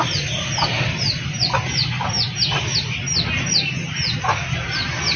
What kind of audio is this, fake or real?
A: real